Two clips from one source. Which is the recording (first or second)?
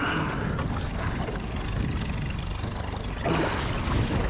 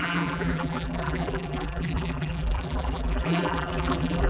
first